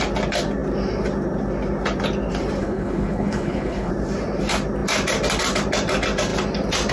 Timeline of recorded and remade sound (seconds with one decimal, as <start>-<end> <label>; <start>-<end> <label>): 0.0-2.6 recorded; 2.6-3.9 remade; 3.9-6.9 recorded